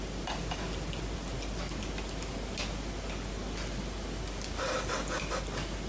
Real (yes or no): yes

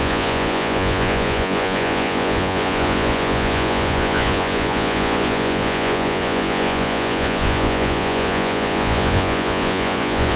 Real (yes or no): no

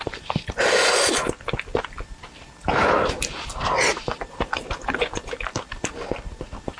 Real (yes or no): yes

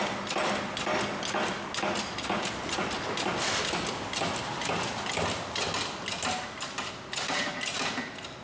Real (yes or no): yes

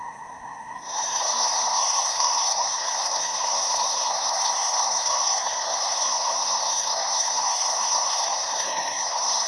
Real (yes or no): no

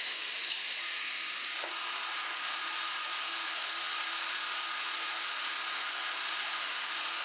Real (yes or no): no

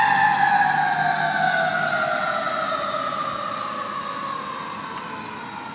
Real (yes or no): yes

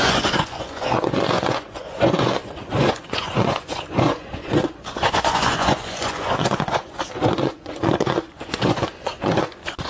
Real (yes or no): no